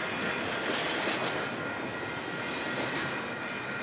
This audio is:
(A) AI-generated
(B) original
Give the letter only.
B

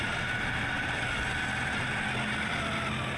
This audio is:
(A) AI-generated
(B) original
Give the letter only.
B